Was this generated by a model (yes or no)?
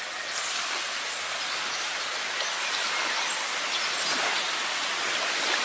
no